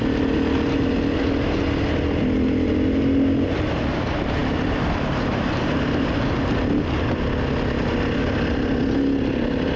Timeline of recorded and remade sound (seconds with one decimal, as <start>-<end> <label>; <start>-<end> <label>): 0.0-9.8 recorded